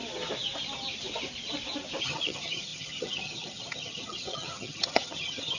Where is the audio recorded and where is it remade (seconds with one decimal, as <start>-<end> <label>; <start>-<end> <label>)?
0.0-2.0 recorded; 2.0-5.6 remade